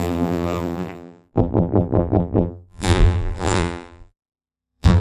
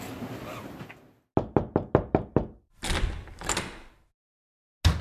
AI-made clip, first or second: first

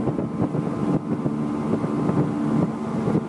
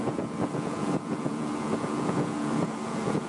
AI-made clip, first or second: second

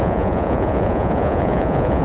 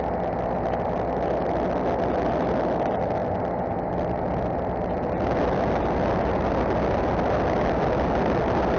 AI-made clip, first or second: first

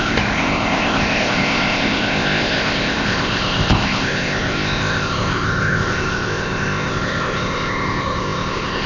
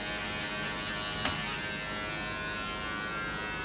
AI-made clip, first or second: first